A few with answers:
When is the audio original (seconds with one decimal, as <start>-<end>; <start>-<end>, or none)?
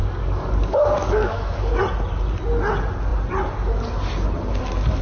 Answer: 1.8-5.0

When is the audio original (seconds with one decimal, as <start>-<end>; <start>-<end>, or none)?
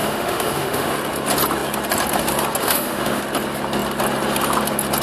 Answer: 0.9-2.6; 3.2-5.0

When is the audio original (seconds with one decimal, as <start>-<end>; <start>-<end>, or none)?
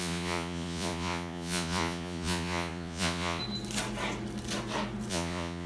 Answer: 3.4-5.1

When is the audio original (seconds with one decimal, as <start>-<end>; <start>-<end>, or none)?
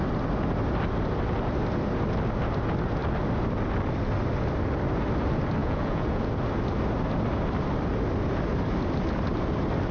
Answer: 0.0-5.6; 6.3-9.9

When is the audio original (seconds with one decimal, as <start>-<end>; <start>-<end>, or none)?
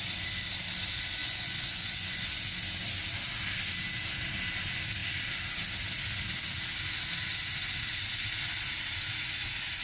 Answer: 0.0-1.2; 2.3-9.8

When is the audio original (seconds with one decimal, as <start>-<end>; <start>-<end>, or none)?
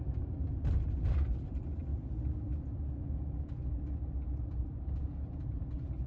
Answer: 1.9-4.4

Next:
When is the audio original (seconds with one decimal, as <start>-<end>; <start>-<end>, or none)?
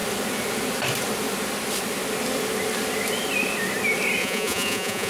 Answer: 0.0-4.2